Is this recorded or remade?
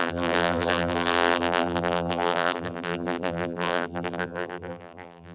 remade